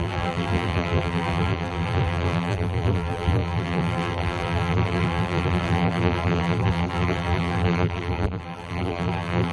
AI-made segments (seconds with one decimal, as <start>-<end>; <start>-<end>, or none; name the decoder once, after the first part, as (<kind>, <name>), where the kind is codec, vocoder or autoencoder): 0.0-9.5 (vocoder, BigVGAN v2)